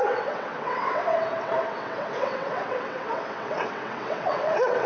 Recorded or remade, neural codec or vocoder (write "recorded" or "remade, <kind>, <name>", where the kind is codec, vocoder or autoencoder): remade, vocoder, WaveNeXt